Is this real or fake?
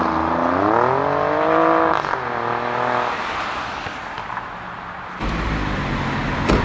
real